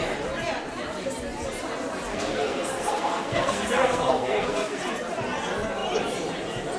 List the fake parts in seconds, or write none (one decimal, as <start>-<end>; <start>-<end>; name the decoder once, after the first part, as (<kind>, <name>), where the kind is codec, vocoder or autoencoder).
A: 2.1-4.8 (codec, SNAC)